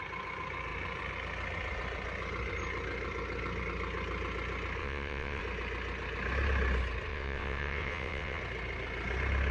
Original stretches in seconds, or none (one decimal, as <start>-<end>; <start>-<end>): 0.0-4.8; 5.4-7.1; 8.4-9.5